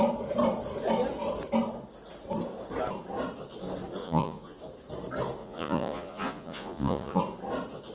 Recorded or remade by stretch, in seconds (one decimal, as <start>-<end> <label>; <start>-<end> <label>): 0.0-4.0 recorded; 4.0-4.6 remade; 4.6-5.4 recorded; 5.4-7.2 remade; 7.2-7.9 recorded